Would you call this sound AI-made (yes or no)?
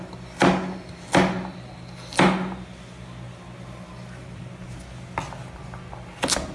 no